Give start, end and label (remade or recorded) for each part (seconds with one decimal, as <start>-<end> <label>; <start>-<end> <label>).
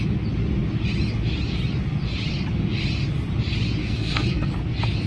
0.0-3.8 recorded; 3.8-4.5 remade; 4.5-5.1 recorded